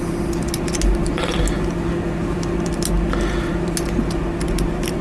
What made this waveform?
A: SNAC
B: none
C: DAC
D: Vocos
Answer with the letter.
B